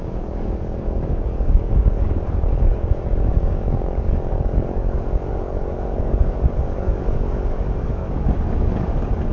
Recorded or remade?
remade